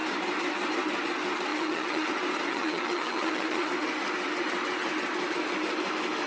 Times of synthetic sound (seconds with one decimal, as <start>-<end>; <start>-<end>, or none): 1.5-2.1; 2.5-3.7

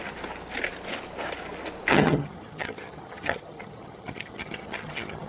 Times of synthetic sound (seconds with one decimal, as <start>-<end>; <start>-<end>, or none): 1.9-5.3

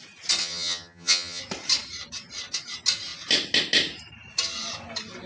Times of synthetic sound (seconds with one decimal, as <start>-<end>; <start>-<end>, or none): 0.4-1.4

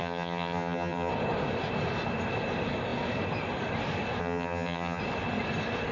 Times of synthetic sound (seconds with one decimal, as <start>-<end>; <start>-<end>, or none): 0.0-1.1; 4.2-5.0